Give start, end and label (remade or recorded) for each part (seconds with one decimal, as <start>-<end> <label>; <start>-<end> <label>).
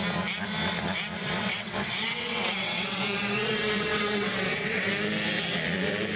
0.0-1.2 recorded; 1.2-4.9 remade; 4.9-6.2 recorded